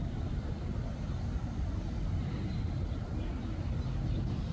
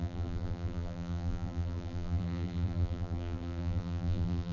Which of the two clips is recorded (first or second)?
first